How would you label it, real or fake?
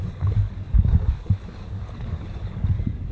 fake